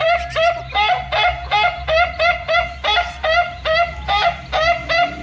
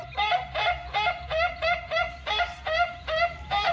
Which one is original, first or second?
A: first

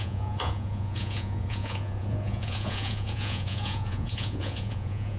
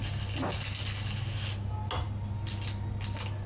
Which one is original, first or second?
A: second